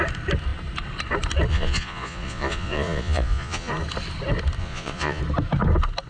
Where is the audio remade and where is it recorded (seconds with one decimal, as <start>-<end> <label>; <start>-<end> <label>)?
0.0-1.5 recorded; 1.5-3.7 remade; 3.7-4.6 recorded; 4.6-5.2 remade; 5.2-6.1 recorded